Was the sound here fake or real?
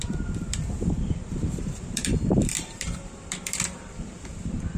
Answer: fake